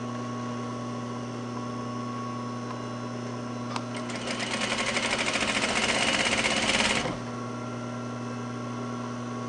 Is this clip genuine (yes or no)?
yes